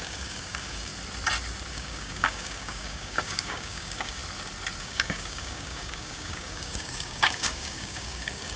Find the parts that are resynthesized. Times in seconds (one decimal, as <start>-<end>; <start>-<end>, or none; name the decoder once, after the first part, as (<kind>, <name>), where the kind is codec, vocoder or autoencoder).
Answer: 0.0-0.9 (codec, DAC); 1.7-4.2; 4.8-8.6